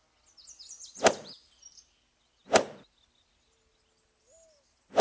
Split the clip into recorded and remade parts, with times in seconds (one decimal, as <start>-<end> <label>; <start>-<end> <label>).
0.0-5.0 recorded